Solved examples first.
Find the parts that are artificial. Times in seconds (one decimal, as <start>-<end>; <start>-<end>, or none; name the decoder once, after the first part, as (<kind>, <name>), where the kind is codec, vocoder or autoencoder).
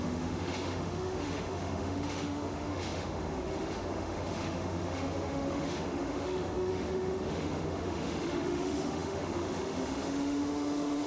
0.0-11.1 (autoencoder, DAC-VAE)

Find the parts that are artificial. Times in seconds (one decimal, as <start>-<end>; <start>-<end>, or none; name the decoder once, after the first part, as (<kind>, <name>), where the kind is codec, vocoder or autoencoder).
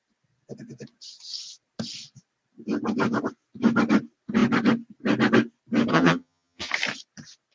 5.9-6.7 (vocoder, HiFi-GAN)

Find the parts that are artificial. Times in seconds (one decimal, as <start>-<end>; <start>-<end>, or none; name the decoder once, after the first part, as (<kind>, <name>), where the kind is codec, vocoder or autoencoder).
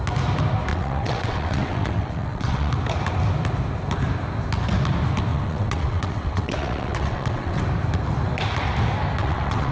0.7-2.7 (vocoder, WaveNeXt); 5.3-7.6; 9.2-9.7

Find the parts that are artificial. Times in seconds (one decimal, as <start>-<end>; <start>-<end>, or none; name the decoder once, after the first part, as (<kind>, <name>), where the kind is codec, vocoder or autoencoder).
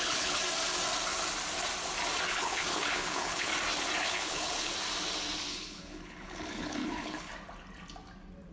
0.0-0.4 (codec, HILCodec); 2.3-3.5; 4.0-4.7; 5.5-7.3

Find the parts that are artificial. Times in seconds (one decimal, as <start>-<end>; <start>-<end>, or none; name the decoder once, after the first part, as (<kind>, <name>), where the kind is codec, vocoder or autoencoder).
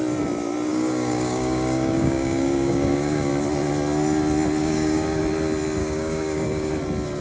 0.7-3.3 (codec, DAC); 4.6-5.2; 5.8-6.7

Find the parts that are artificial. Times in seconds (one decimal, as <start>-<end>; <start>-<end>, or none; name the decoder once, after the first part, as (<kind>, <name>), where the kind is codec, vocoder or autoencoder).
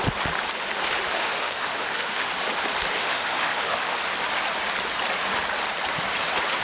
1.2-2.3 (autoencoder, DAC-VAE); 3.0-4.0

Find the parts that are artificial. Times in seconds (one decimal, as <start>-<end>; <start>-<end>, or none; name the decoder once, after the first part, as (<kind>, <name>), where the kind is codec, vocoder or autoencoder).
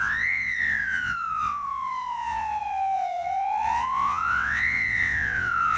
0.0-5.8 (vocoder, WaveNeXt)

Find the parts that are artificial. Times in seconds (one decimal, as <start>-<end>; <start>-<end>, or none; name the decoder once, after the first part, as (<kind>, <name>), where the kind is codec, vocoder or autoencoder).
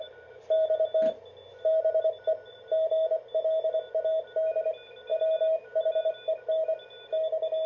none